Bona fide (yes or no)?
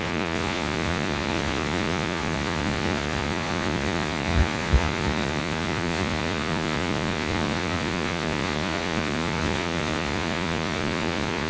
no